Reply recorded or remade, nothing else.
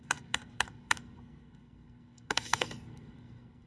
remade